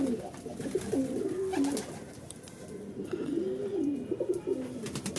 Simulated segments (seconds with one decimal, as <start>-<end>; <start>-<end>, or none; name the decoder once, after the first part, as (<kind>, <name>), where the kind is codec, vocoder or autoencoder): none